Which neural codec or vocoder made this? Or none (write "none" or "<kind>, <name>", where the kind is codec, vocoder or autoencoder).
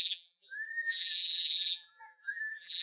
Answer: vocoder, BigVGAN v2